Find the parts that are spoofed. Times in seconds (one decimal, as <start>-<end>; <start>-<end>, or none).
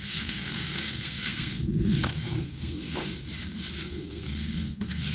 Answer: 0.0-3.0; 3.8-5.1